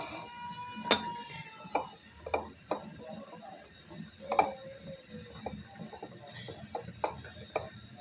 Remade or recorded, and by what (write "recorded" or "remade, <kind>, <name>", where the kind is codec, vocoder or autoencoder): recorded